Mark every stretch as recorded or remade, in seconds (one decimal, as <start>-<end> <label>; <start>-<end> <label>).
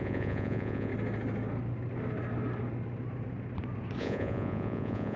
0.0-0.9 remade; 0.9-4.0 recorded; 4.0-5.2 remade